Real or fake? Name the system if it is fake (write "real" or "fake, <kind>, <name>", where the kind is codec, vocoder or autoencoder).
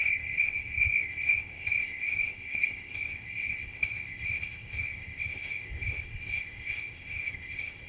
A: fake, codec, ZipCodec